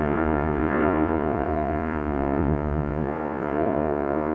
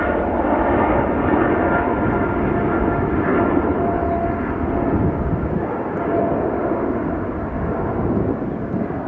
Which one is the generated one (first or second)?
first